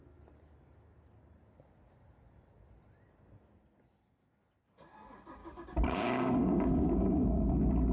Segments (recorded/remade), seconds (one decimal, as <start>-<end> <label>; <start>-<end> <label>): 0.0-5.4 recorded; 5.4-7.5 remade; 7.5-7.9 recorded